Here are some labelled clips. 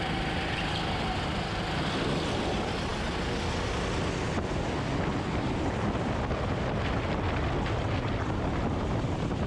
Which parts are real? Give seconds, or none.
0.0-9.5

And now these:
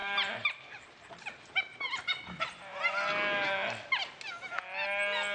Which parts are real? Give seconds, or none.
2.0-5.3

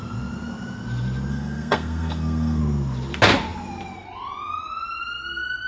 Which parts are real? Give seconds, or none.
0.0-1.3; 2.6-5.7

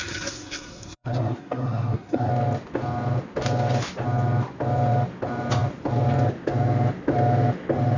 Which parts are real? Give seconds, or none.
2.3-8.0

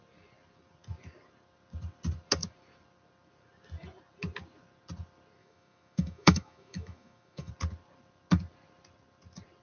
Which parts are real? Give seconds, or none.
0.0-5.4; 7.5-9.6

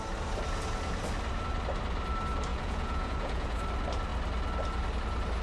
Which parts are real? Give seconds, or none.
0.0-2.5; 3.6-5.4

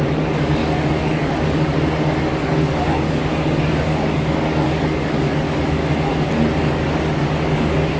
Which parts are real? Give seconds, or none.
5.8-6.6

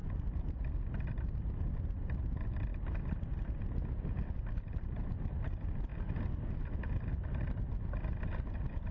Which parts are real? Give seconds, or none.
0.0-8.9